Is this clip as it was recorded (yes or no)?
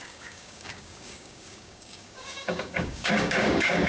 no